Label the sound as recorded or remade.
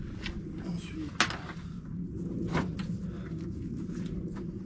recorded